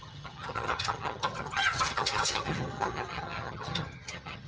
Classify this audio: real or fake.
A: fake